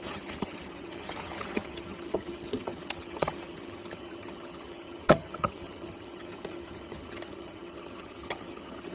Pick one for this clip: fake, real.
fake